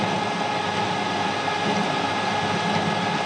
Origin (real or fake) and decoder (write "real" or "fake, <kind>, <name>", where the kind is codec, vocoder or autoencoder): real